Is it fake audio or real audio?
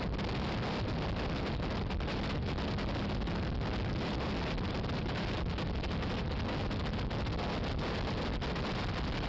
real